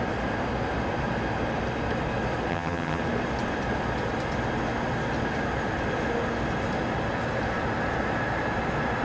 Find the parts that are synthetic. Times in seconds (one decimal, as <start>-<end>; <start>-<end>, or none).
2.5-3.0